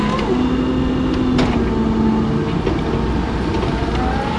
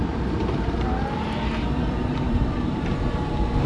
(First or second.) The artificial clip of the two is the second